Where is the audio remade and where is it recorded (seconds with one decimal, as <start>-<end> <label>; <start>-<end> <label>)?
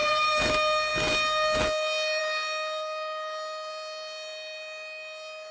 0.0-0.5 remade; 0.5-5.5 recorded